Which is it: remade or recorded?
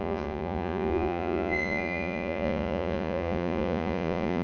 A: remade